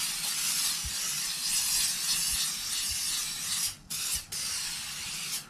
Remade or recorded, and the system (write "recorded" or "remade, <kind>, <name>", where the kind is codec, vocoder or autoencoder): recorded